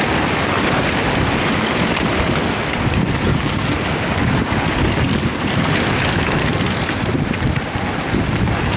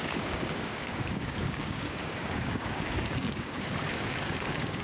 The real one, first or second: first